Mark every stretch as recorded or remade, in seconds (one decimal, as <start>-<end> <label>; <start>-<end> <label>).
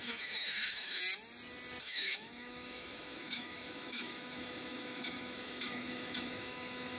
0.0-1.0 remade; 1.0-1.8 recorded; 1.8-7.0 remade